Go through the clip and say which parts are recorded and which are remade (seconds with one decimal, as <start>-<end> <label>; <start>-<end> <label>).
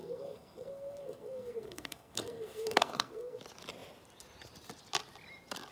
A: 0.0-3.4 remade; 3.4-5.7 recorded